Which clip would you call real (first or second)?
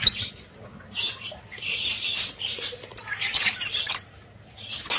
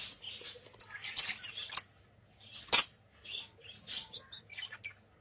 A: second